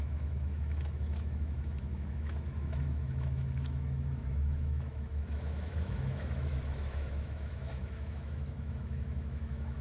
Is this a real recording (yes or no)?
no